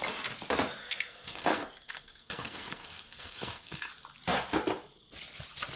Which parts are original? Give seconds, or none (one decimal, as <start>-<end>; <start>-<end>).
0.0-0.8; 3.9-5.8